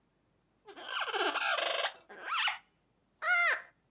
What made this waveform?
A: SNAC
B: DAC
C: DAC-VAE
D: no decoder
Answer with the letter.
D